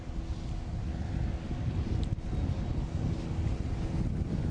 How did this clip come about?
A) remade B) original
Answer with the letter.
B